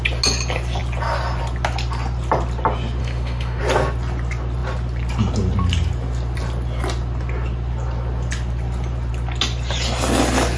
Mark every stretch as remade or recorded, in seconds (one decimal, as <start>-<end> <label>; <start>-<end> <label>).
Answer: 0.0-3.0 recorded; 3.0-3.6 remade; 3.6-10.6 recorded